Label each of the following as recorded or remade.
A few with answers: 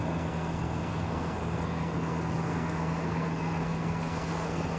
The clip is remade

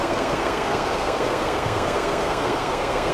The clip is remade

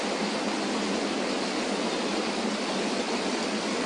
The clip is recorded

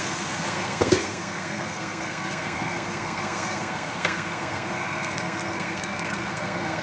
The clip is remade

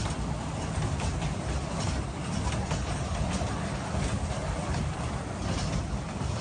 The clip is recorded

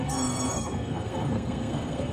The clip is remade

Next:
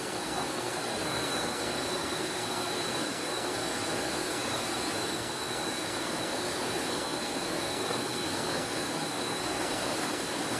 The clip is remade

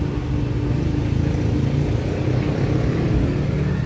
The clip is recorded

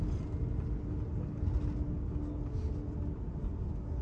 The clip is recorded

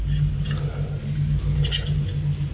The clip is recorded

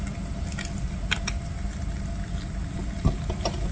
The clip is recorded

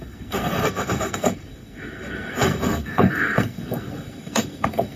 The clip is remade